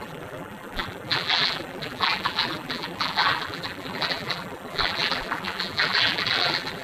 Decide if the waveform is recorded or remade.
remade